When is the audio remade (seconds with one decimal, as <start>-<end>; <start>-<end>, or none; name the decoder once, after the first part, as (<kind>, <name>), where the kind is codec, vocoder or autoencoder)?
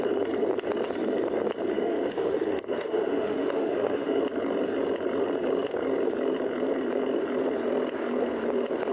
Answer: 1.7-4.2 (autoencoder, DAC-VAE)